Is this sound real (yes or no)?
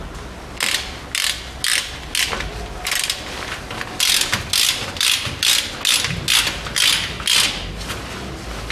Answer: yes